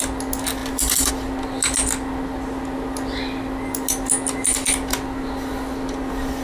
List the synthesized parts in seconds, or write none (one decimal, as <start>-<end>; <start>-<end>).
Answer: none